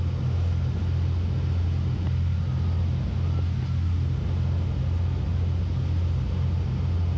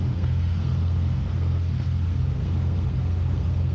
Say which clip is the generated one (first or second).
second